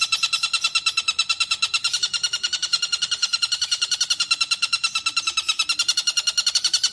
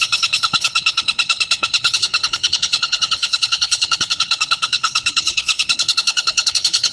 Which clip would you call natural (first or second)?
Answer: first